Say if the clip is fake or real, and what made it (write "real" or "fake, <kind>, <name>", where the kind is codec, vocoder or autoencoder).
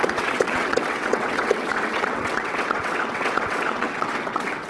fake, vocoder, WaveNeXt